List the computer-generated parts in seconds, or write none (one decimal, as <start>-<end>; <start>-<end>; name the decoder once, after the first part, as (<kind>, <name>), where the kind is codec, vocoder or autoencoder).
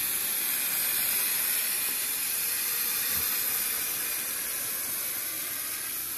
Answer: 2.0-3.0 (vocoder, BigVGAN v2)